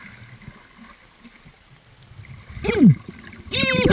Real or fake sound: real